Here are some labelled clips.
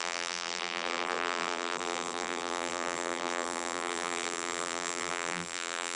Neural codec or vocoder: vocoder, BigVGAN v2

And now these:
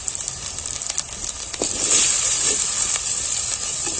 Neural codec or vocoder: vocoder, BigVGAN v2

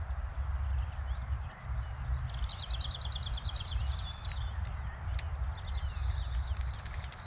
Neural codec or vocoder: none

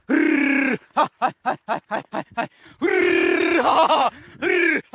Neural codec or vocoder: vocoder, BigVGAN v2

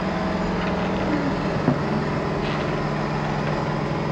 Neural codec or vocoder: none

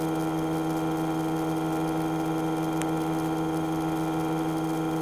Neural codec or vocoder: none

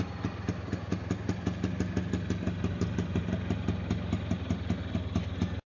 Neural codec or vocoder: none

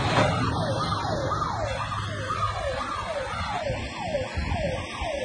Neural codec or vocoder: none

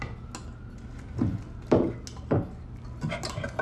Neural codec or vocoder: none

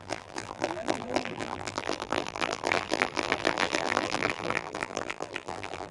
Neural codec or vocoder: vocoder, BigVGAN v2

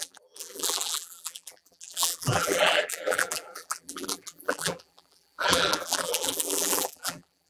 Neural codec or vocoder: vocoder, BigVGAN v2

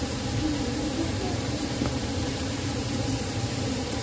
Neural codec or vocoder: vocoder, BigVGAN v2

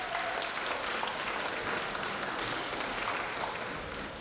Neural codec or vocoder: none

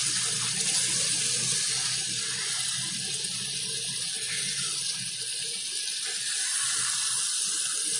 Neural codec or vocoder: none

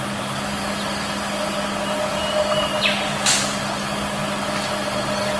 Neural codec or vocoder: none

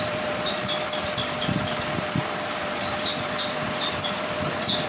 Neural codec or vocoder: vocoder, BigVGAN v2